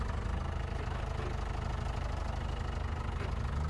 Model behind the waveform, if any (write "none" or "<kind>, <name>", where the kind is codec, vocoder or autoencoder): none